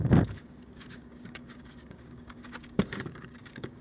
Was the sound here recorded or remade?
remade